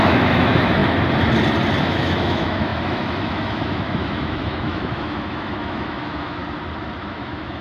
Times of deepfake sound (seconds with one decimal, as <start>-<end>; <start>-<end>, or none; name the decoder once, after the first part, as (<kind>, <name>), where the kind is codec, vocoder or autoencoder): 0.0-0.8 (autoencoder, DAC-VAE); 1.8-6.4; 7.0-7.6

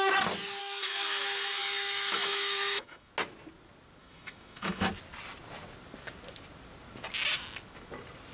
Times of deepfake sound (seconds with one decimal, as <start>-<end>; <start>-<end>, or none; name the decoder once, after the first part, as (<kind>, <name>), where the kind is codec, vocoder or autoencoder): 0.6-3.1 (autoencoder, DAC-VAE); 4.0-4.9

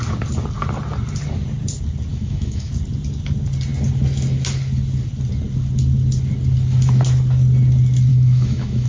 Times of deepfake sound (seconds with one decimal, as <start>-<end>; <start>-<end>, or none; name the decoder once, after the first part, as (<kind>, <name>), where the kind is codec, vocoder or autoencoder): 2.1-2.7 (autoencoder, DAC-VAE); 8.1-8.9

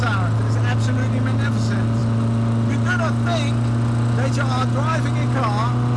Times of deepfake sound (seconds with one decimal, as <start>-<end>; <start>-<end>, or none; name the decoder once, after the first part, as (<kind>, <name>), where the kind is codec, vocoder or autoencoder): none